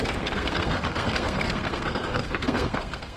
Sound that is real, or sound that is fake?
fake